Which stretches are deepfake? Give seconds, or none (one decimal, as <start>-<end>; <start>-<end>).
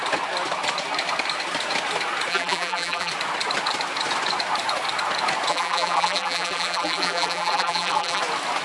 2.3-3.1; 5.5-8.2